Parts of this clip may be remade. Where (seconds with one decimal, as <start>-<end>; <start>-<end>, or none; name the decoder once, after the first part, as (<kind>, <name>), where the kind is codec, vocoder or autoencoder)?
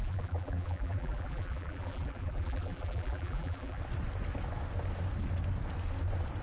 0.0-3.8 (vocoder, BigVGAN v2)